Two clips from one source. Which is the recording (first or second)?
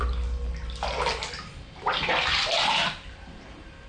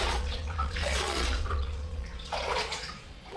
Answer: first